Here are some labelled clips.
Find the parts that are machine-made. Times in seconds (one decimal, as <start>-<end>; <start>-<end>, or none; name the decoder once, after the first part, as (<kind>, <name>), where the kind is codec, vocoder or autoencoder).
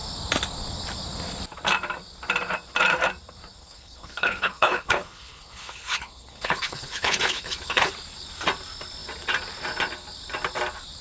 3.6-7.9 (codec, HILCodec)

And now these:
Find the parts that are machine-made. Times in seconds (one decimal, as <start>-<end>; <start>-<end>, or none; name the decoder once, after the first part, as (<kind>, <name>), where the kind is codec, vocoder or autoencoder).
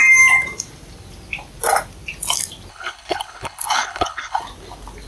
2.7-4.4 (codec, HILCodec)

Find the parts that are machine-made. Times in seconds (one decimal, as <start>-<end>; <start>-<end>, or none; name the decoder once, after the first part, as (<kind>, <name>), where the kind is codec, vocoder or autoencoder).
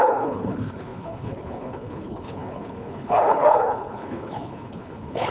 0.0-5.3 (codec, HILCodec)